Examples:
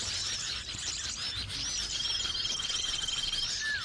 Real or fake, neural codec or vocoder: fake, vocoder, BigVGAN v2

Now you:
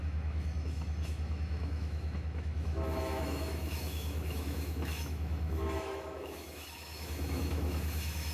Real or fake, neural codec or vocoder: fake, autoencoder, DAC-VAE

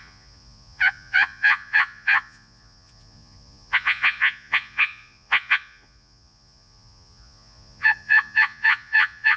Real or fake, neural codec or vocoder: fake, vocoder, Vocos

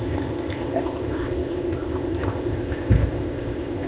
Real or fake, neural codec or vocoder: fake, codec, ZipCodec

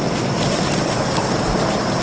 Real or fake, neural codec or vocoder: real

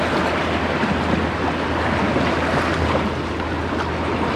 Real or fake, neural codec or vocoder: real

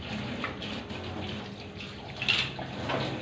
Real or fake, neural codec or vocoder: real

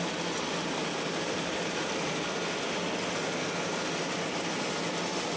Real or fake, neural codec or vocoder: real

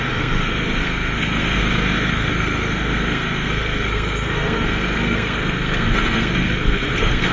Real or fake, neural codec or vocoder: fake, codec, SNAC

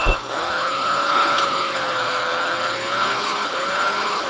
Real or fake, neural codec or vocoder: fake, codec, HILCodec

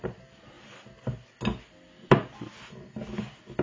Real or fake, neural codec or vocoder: real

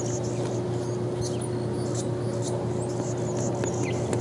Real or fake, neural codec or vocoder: real